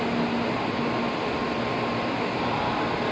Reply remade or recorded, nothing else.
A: recorded